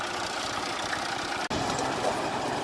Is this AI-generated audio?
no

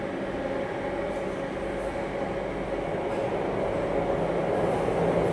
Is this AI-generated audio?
no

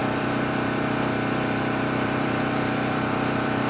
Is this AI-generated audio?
yes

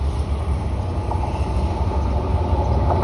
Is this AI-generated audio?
no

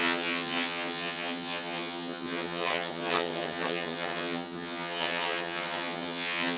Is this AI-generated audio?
yes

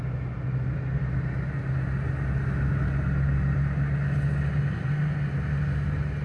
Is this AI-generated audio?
no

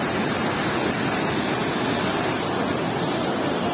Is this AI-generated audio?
no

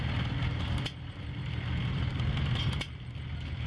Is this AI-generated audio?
no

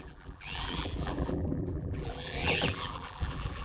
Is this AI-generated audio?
yes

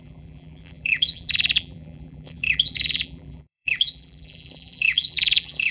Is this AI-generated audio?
yes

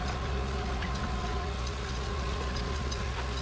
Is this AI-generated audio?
yes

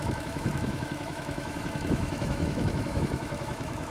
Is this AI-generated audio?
yes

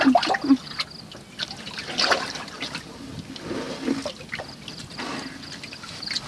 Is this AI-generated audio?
no